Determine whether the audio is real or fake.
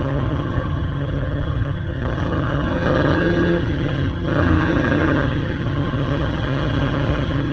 fake